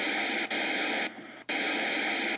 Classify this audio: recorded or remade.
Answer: recorded